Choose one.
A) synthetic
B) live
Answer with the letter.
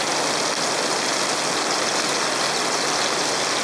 B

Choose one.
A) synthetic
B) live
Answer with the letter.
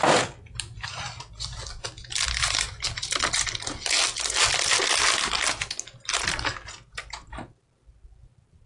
B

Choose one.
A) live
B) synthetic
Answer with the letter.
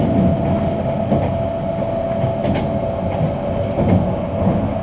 A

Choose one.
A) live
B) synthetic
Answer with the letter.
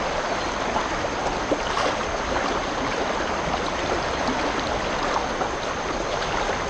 A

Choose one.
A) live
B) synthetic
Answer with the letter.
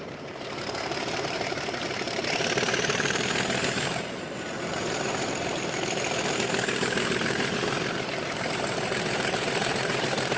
B